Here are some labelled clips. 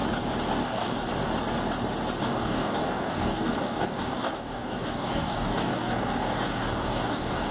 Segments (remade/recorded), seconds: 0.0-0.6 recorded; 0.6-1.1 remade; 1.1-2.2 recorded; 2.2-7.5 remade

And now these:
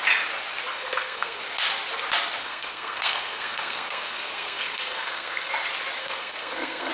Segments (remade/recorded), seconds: 0.0-0.7 recorded; 0.7-1.4 remade; 1.4-2.4 recorded; 2.4-5.5 remade; 5.5-6.0 recorded; 6.0-6.9 remade

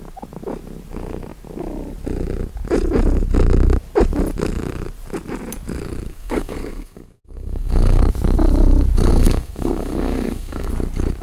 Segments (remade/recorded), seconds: 0.0-6.1 recorded; 6.1-8.0 remade; 8.0-9.1 recorded; 9.1-10.7 remade; 10.7-11.2 recorded